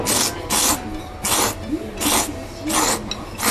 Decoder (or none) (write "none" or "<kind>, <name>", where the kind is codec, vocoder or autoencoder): none